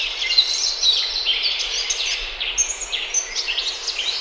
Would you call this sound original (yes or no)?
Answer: yes